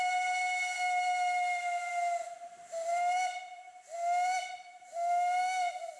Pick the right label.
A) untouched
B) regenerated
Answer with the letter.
A